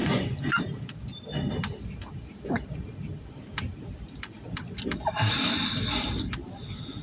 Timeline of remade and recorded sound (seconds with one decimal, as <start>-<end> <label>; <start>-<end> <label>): 0.0-0.6 remade; 0.6-7.0 recorded